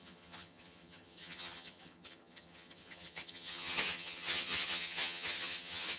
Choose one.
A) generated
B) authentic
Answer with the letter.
A